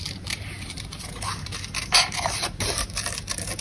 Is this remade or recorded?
remade